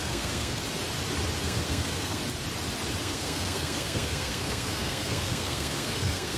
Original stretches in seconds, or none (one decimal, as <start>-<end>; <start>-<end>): 0.6-1.4; 2.2-3.0